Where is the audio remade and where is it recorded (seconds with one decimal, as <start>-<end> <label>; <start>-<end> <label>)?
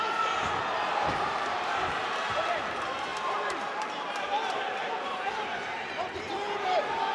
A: 0.0-1.2 recorded; 1.2-7.1 remade